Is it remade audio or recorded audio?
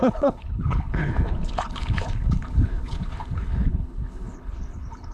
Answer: remade